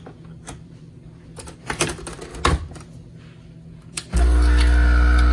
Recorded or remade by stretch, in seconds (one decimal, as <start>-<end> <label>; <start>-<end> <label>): 0.0-2.3 remade; 2.3-3.9 recorded; 3.9-5.3 remade